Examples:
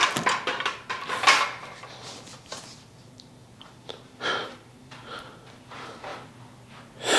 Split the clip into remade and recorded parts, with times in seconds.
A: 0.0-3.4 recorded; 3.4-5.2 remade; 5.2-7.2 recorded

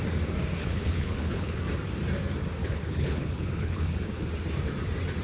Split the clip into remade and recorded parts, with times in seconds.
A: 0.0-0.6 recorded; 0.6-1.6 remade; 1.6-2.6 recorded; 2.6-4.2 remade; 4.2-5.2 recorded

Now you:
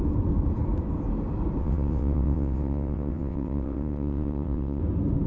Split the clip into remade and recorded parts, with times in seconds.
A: 0.0-1.6 recorded; 1.6-4.8 remade; 4.8-5.3 recorded

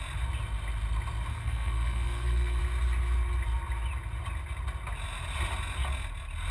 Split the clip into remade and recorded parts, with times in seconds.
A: 0.0-1.3 recorded; 1.3-2.6 remade; 2.6-6.5 recorded